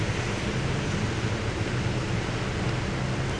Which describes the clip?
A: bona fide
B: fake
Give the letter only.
A